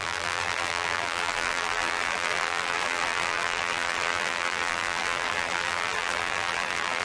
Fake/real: fake